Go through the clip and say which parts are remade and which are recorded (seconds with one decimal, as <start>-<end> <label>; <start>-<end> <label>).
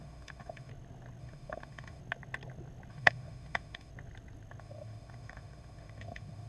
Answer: 0.0-0.7 remade; 0.7-1.2 recorded; 1.2-2.0 remade; 2.0-2.9 recorded; 2.9-3.9 remade; 3.9-4.6 recorded; 4.6-6.5 remade